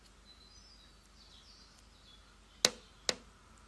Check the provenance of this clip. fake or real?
real